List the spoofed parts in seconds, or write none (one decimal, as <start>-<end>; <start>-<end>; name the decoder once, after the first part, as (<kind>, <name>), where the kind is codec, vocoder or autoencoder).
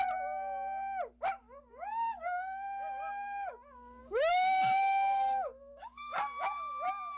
1.4-3.5 (codec, DAC); 4.0-6.7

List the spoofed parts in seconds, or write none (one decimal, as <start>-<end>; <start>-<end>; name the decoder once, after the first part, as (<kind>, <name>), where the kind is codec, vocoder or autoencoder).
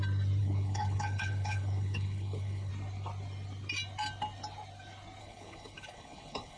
0.4-2.7 (codec, HILCodec); 5.2-6.6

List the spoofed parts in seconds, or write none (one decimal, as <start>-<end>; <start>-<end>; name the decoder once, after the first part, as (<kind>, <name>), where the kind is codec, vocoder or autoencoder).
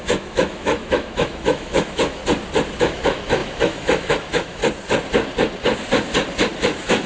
0.0-2.2 (autoencoder, DAC-VAE); 2.8-4.6; 6.6-7.1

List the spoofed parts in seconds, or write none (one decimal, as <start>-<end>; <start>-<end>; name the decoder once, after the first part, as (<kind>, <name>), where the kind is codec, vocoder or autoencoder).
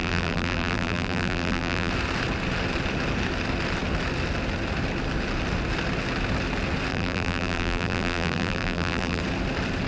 0.0-1.9 (vocoder, BigVGAN v2); 6.9-9.2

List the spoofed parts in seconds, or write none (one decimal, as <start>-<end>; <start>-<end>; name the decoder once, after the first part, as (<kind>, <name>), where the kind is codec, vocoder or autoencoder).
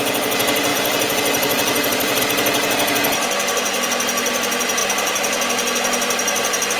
0.7-2.2 (vocoder, BigVGAN v2)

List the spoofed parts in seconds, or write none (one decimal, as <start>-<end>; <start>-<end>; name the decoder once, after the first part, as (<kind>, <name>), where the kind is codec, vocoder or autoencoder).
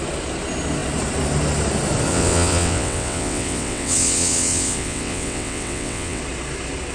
2.1-6.2 (vocoder, WaveNeXt)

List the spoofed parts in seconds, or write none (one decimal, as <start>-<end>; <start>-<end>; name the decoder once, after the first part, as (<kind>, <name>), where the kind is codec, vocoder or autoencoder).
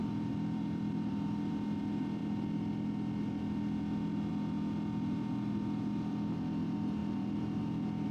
0.0-1.5 (vocoder, BigVGAN v2); 7.0-7.6